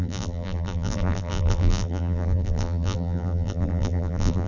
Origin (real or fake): fake